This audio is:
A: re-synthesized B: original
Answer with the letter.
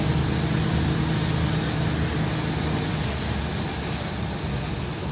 B